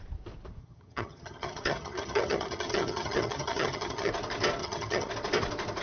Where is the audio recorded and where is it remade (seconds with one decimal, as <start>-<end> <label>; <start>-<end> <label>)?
0.0-0.6 recorded; 0.6-4.1 remade; 4.1-4.6 recorded; 4.6-5.1 remade; 5.1-5.8 recorded